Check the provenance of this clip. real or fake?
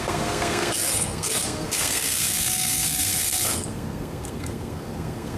fake